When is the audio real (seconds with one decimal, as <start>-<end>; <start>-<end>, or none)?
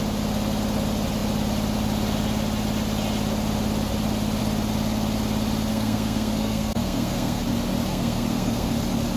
0.0-5.7; 7.4-7.9; 8.7-9.2